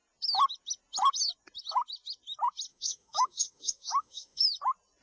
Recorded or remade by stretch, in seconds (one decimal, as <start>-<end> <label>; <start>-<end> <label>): 0.0-2.7 recorded; 2.7-4.4 remade; 4.4-5.0 recorded